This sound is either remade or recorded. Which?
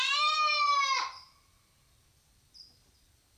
recorded